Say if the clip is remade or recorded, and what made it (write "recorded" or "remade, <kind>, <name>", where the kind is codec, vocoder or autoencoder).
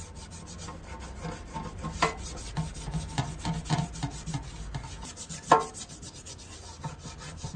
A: recorded